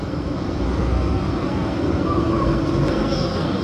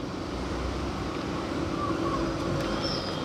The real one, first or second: second